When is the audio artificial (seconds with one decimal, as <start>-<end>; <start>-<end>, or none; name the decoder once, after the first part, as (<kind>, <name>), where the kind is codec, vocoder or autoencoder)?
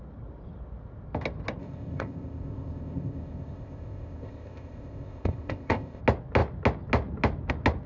1.6-6.0 (codec, ZipCodec)